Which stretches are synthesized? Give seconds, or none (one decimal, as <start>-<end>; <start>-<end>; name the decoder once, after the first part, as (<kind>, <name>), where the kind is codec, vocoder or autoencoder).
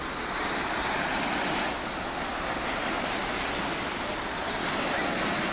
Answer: none